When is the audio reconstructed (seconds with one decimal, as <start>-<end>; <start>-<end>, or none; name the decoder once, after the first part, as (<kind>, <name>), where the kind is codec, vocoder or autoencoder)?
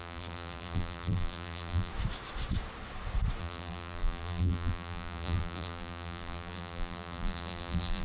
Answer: 0.0-1.9 (vocoder, BigVGAN v2); 3.4-8.0